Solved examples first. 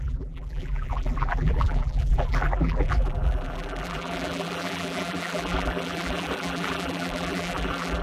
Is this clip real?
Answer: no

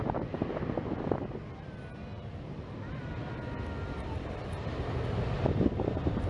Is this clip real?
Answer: yes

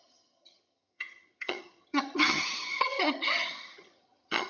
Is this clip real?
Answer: no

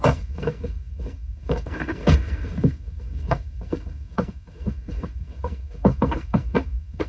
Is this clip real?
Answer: no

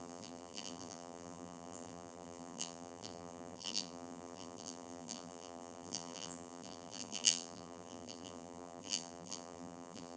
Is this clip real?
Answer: no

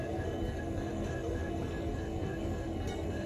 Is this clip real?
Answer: no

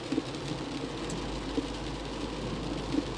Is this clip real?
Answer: yes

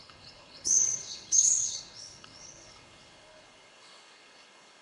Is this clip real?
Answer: no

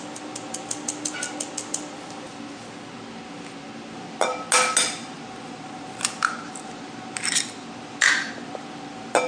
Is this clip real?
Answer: yes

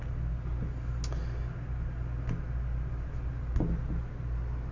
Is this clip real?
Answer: yes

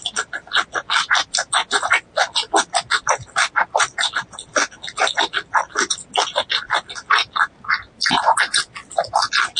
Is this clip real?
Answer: yes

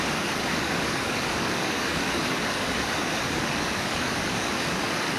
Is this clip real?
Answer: no